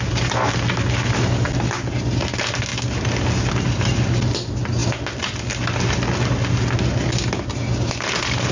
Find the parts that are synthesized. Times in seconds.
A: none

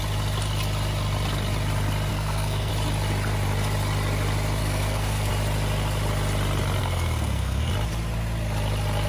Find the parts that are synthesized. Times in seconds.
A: 2.1-2.7 (codec, SNAC); 4.6-5.3; 6.8-7.7

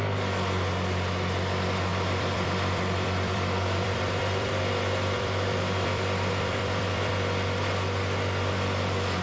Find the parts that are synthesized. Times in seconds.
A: 1.9-7.1 (vocoder, BigVGAN v2)

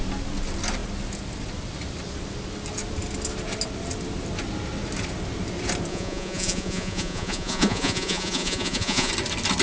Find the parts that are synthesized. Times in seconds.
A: 5.9-9.1 (vocoder, Vocos)

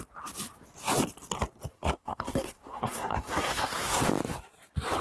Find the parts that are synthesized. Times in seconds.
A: 1.7-4.0 (codec, SNAC)

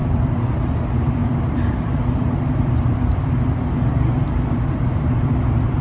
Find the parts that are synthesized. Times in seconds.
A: none